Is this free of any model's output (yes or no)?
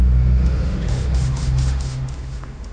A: no